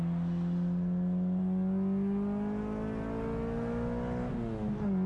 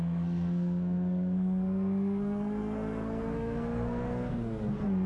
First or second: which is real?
first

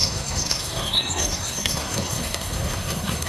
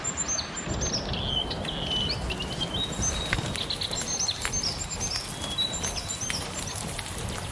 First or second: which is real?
second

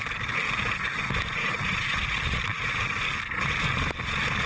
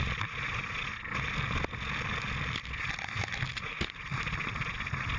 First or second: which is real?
second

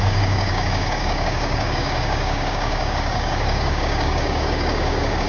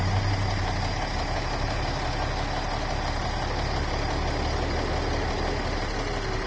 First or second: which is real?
second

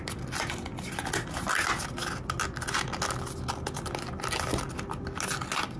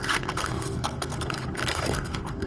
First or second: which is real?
first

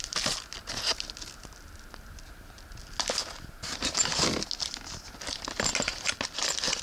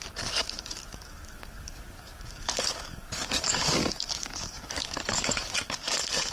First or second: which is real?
first